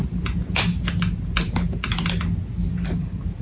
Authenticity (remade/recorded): recorded